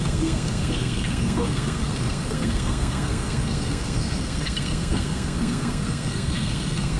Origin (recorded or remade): remade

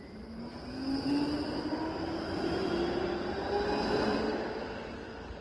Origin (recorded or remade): recorded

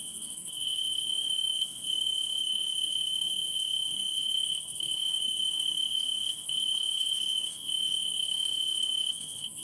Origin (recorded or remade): remade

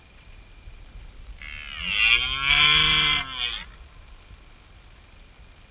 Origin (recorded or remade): recorded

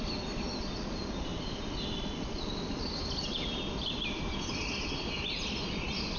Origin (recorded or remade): recorded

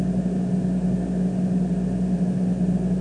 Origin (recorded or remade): recorded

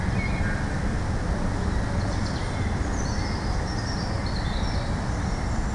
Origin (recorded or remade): recorded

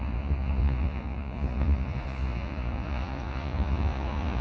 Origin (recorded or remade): remade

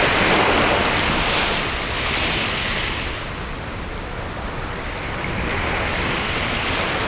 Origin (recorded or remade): recorded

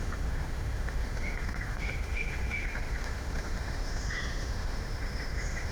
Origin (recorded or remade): remade